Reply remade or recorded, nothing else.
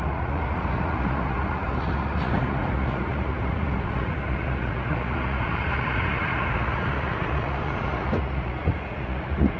remade